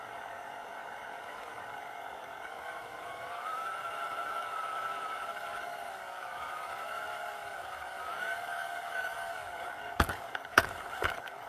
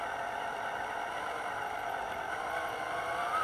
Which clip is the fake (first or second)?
first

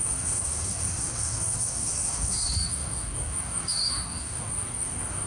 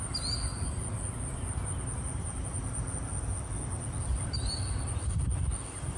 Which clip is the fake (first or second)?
first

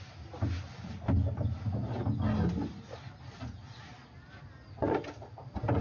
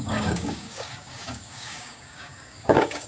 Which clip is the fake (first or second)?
second